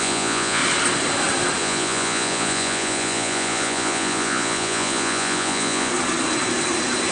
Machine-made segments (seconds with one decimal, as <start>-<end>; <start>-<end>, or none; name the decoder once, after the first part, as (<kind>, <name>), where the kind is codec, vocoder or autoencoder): 0.0-0.6 (vocoder, Vocos); 1.6-5.9